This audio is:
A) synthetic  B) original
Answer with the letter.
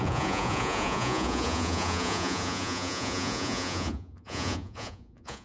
A